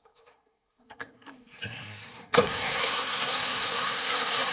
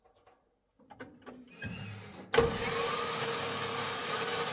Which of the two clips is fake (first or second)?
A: first